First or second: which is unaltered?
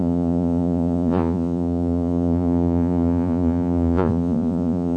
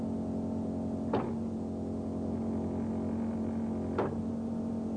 second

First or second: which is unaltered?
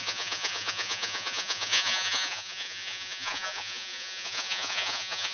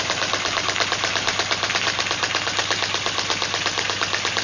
second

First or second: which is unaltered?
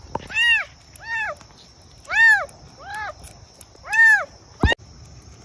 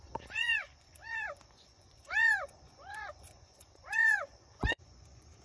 first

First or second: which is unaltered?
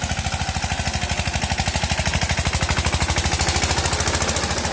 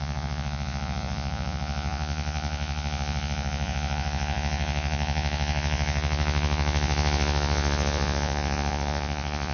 first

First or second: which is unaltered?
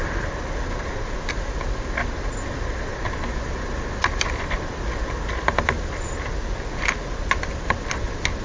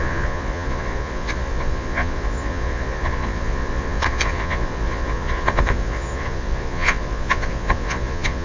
first